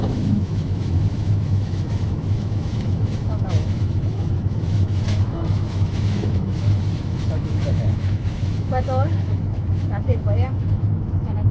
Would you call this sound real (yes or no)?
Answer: no